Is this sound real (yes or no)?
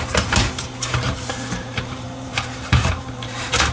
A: no